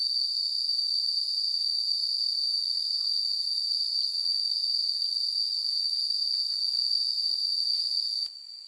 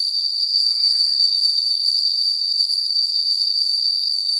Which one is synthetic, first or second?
second